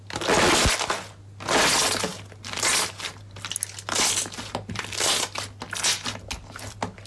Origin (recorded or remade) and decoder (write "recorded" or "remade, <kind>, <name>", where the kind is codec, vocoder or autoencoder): recorded